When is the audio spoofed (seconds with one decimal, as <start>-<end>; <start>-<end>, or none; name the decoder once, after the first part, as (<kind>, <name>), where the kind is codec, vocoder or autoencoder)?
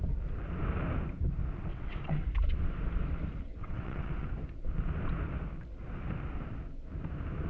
1.7-2.2 (vocoder, WaveNeXt); 3.6-4.3